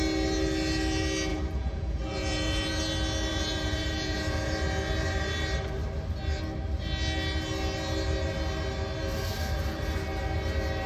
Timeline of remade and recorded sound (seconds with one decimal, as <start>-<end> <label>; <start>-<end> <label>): 0.0-1.3 recorded; 1.3-2.8 remade; 2.8-3.3 recorded; 3.3-4.5 remade; 4.5-10.9 recorded